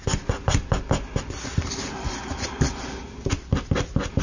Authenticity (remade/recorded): recorded